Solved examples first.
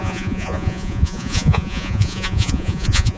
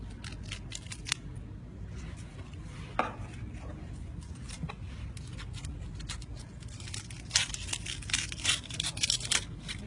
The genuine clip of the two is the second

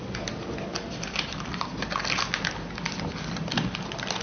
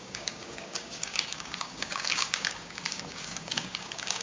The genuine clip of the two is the first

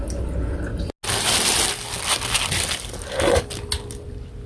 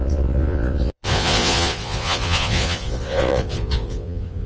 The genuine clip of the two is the first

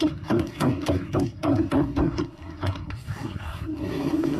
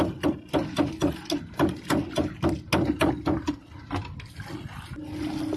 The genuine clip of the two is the second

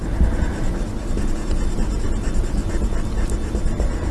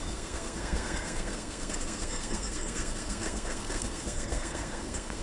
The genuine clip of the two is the first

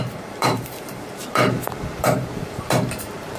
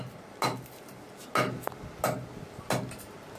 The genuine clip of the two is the second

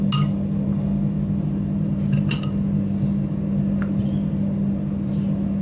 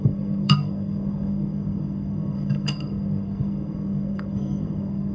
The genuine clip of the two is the first